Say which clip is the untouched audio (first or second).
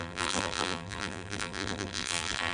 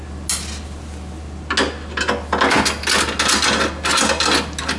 second